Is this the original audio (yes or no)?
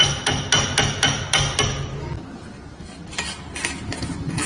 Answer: yes